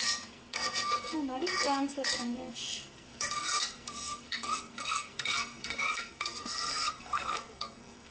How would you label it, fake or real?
fake